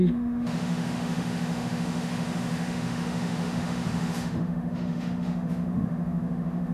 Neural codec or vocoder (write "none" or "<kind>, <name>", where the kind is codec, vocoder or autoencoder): autoencoder, DAC-VAE